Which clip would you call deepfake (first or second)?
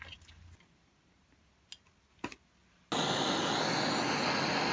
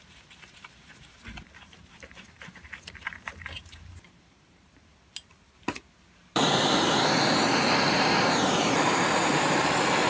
second